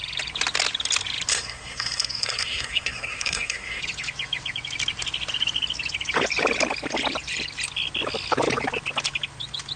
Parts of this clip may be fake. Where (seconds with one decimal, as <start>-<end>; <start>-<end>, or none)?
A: 1.3-3.8